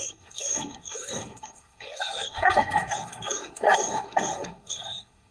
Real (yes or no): no